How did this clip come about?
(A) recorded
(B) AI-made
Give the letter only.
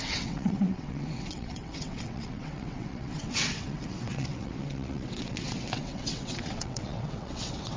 B